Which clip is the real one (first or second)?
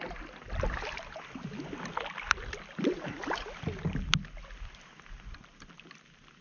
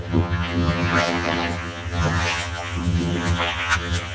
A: first